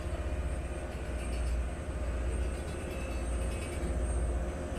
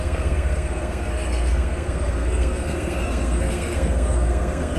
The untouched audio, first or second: first